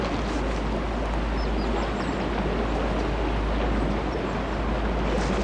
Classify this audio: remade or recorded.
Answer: recorded